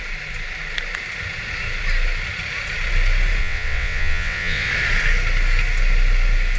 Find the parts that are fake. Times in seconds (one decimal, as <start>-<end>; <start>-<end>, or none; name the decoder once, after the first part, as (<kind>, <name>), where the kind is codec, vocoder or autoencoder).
3.4-4.7 (vocoder, WaveNeXt)